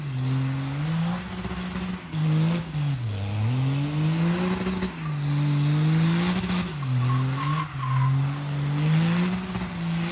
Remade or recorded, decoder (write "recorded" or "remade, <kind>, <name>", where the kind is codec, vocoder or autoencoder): recorded